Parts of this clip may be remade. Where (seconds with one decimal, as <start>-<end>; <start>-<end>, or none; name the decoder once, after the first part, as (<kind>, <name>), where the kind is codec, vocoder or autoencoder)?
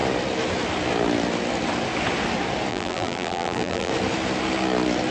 2.7-3.9 (vocoder, BigVGAN v2)